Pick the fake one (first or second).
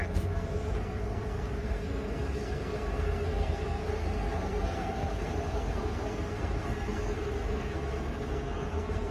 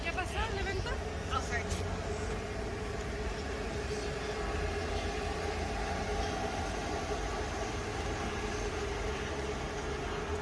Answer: first